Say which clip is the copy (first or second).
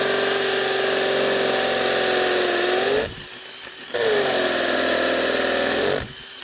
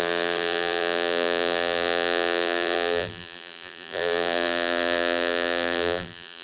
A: second